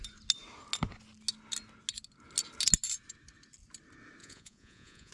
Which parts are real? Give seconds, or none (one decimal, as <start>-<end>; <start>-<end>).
0.0-4.2